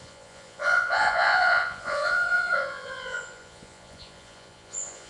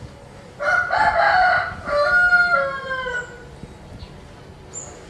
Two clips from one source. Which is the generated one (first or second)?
first